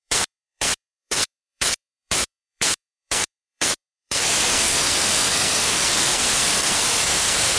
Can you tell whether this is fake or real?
fake